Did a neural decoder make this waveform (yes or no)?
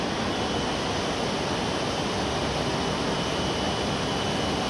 no